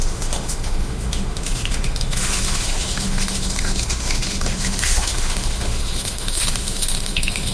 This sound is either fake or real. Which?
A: fake